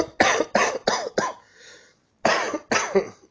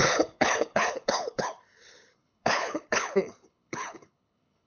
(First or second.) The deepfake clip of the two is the second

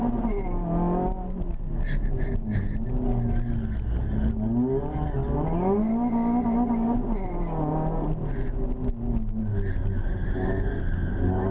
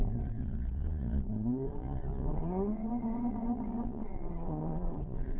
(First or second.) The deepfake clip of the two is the second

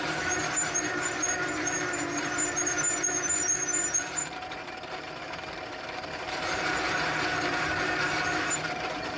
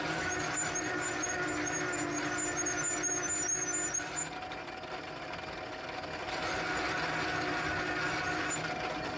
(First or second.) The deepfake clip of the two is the first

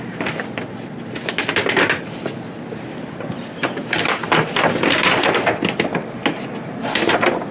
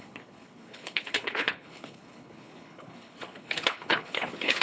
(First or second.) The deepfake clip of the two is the second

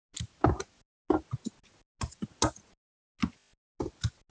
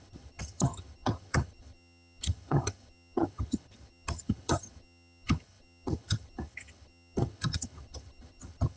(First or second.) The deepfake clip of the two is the second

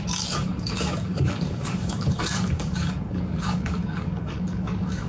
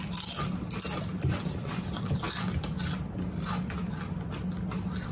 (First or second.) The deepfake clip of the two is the first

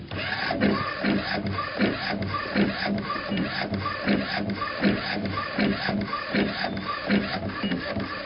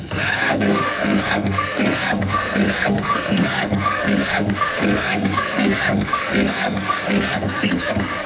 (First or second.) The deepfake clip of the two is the second